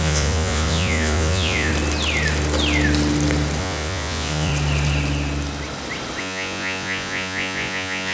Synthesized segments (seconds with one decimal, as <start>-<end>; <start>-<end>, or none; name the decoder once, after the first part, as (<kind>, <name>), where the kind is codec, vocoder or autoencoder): 0.0-1.7 (vocoder, Vocos); 3.6-4.5; 6.2-8.1